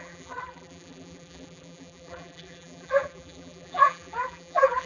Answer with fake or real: fake